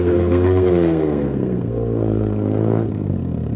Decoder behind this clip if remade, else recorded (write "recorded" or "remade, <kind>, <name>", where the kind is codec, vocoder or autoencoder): remade, codec, SNAC